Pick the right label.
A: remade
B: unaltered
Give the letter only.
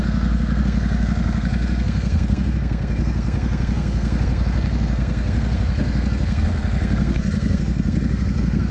A